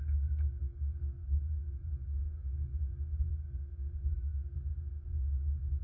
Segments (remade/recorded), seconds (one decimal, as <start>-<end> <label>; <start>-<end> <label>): 0.0-2.7 remade; 2.7-3.3 recorded; 3.3-4.7 remade; 4.7-5.8 recorded

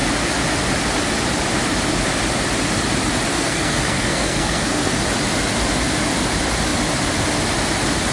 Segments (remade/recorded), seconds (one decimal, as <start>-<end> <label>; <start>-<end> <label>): 0.0-3.3 recorded; 3.3-5.0 remade; 5.0-8.1 recorded

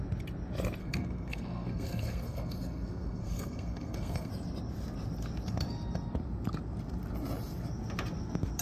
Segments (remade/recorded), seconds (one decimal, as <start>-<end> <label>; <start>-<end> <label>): 0.0-0.8 recorded; 0.8-4.3 remade; 4.3-8.6 recorded

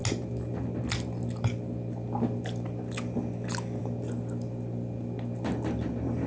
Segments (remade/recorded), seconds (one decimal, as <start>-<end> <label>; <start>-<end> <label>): 0.0-6.3 recorded